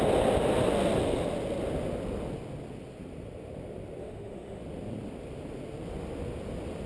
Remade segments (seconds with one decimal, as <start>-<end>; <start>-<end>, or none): 4.0-4.6